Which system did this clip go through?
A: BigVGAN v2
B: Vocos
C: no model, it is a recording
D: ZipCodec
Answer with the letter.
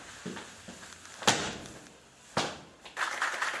C